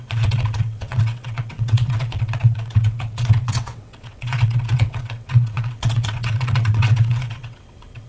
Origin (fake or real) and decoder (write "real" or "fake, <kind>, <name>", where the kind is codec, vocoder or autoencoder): fake, vocoder, WaveNeXt